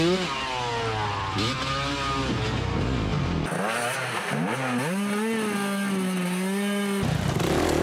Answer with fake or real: real